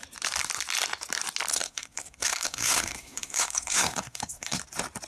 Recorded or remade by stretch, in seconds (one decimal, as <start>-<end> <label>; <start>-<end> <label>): 0.0-1.5 recorded; 1.5-4.6 remade; 4.6-5.1 recorded